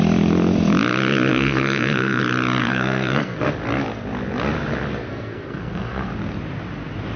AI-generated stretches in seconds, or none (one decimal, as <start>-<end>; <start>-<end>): 1.3-2.2; 2.6-3.5; 5.1-6.1